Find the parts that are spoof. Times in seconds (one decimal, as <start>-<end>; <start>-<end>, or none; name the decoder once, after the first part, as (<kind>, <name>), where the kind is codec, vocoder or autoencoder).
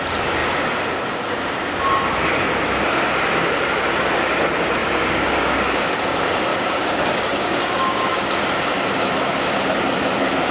4.8-6.0 (codec, DAC); 6.5-8.1